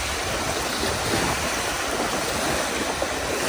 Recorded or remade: recorded